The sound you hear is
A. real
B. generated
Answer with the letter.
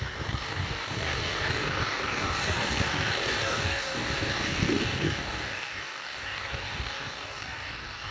B